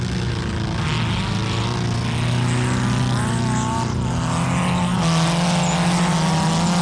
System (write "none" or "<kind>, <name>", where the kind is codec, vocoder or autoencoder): none